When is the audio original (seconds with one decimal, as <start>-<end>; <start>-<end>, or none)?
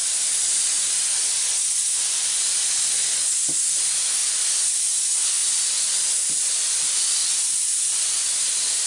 1.1-5.4; 5.9-8.9